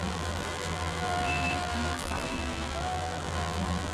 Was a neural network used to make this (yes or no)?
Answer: yes